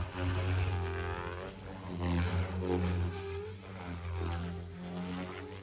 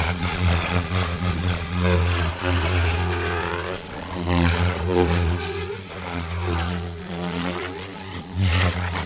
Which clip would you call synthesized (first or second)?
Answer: second